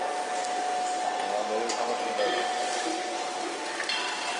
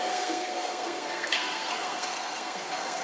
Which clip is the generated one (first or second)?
second